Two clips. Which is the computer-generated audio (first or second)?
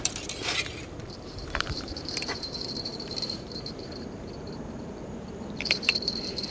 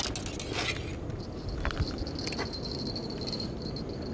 first